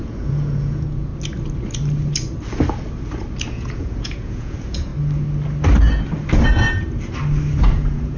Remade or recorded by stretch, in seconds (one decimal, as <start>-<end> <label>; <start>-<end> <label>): 0.0-1.1 remade; 1.1-3.5 recorded; 3.5-4.9 remade; 4.9-7.7 recorded; 7.7-8.2 remade